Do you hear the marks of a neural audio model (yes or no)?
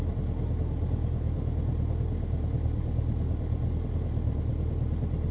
no